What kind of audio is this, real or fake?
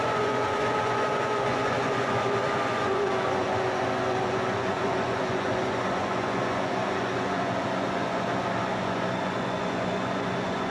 fake